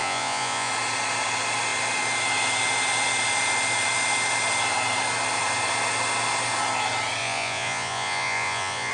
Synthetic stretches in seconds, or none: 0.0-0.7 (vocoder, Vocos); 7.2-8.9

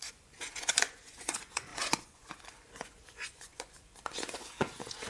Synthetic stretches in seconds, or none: 0.0-5.1 (vocoder, Vocos)

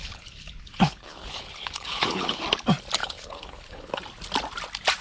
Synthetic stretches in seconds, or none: 0.0-2.4 (codec, HILCodec); 3.0-4.0

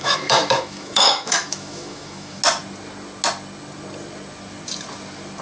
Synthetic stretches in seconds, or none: 0.0-2.4 (autoencoder, DAC-VAE)

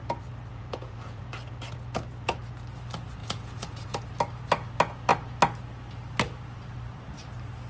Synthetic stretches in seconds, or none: 0.5-1.2 (vocoder, Vocos); 3.2-4.0

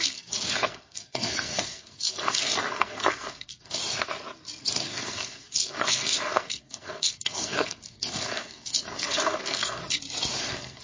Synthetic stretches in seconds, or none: 0.0-3.8 (codec, SNAC); 4.6-9.8; 10.4-10.8